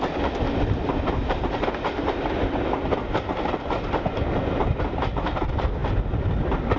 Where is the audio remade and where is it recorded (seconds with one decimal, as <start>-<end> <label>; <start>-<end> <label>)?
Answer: 0.0-6.8 recorded